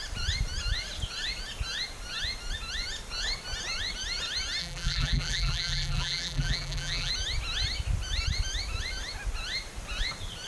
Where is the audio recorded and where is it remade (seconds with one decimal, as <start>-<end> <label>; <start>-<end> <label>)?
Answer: 0.0-4.6 recorded; 4.6-7.1 remade; 7.1-10.5 recorded